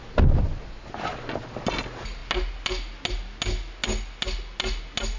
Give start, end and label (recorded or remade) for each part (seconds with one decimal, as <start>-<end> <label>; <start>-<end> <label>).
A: 0.0-5.2 recorded